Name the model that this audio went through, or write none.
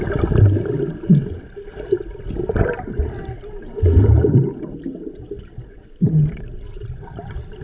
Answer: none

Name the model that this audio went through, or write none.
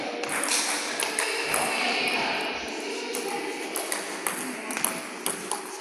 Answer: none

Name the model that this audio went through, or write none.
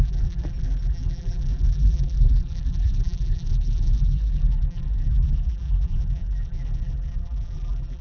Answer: vocoder, BigVGAN v2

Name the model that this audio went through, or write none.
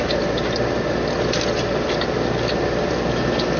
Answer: none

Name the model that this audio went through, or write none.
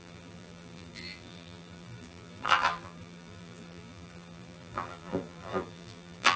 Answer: vocoder, BigVGAN v2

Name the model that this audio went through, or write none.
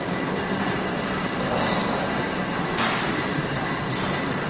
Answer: none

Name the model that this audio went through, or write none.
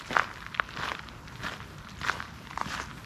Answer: vocoder, BigVGAN v2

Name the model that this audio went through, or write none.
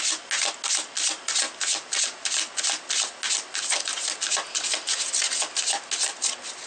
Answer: none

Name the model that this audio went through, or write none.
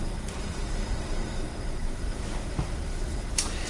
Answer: vocoder, BigVGAN v2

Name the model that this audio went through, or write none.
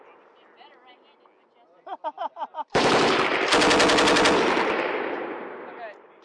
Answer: none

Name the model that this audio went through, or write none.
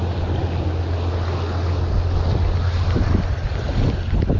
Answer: none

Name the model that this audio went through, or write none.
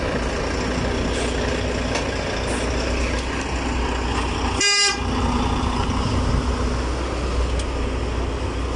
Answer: none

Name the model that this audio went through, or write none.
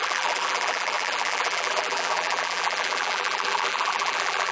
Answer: vocoder, BigVGAN v2